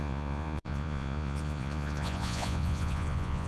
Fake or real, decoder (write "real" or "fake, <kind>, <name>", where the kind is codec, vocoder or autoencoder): fake, vocoder, Vocos